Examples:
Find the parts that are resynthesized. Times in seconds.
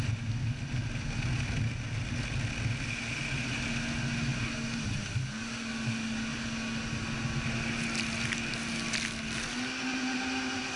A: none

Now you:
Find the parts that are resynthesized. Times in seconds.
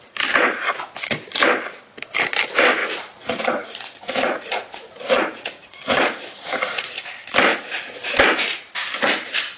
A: 2.8-6.9 (vocoder, Vocos); 7.5-8.1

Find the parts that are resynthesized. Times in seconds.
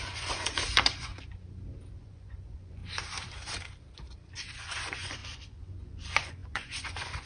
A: 0.0-1.1 (vocoder, Vocos); 1.9-2.8; 4.6-7.3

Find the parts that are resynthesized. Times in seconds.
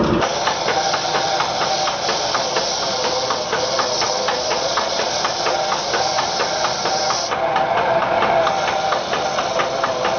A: 4.3-5.1 (vocoder, Vocos)